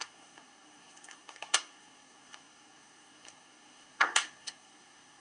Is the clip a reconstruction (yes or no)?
yes